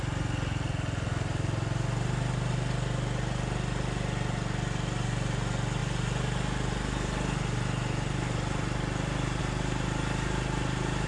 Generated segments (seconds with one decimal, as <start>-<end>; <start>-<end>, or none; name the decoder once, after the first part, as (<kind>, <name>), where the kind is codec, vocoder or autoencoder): none